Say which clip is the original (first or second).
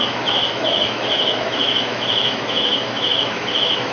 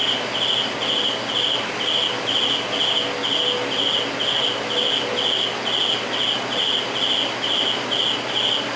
second